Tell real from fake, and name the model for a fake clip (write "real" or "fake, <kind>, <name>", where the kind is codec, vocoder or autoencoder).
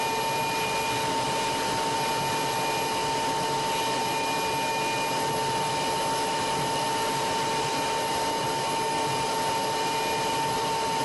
real